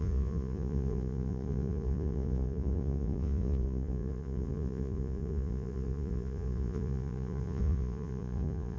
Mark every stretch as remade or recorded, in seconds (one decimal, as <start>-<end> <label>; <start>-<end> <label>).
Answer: 0.0-8.8 remade